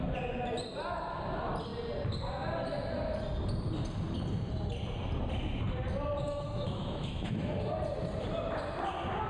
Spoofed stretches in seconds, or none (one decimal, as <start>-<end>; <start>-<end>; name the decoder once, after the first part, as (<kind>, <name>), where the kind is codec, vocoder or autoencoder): 6.2-7.5 (autoencoder, DAC-VAE)